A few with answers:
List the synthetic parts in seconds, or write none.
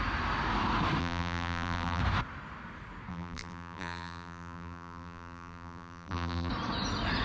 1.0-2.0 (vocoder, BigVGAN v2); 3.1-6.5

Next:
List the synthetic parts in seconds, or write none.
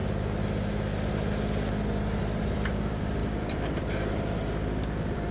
2.2-5.3 (vocoder, BigVGAN v2)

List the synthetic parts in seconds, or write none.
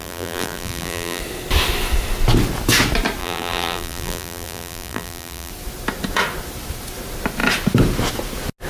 0.0-1.2 (vocoder, BigVGAN v2); 3.2-5.5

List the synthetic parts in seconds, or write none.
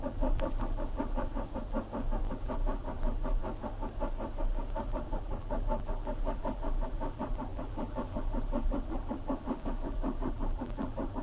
0.0-1.3 (vocoder, BigVGAN v2); 2.3-3.4; 4.9-11.2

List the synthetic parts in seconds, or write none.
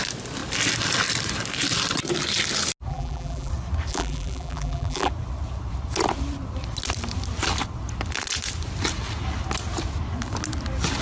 2.9-3.5 (vocoder, BigVGAN v2); 3.9-5.1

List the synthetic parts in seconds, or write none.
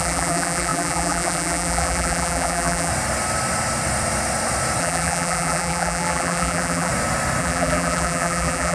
0.0-2.9 (vocoder, BigVGAN v2); 4.8-6.9; 7.4-8.7